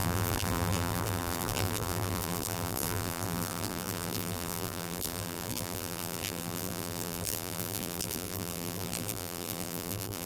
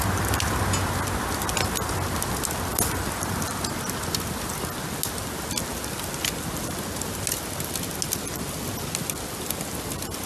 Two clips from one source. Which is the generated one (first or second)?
first